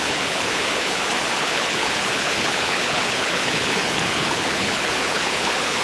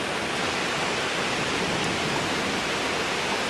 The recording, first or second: second